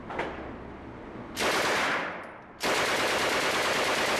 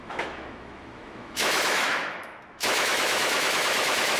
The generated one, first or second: second